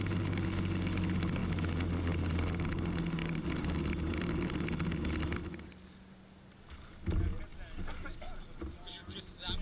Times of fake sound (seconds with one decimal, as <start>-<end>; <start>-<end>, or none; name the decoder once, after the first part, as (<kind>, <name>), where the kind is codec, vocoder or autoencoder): none